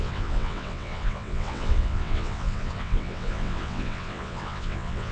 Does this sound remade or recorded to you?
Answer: remade